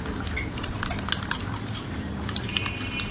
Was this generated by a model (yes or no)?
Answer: no